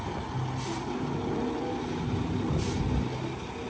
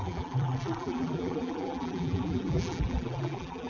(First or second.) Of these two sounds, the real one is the first